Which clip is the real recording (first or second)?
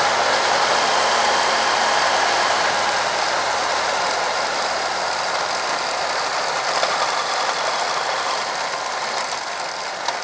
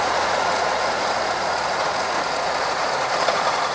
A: first